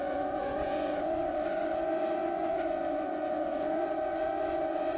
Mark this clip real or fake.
fake